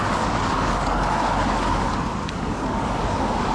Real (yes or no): no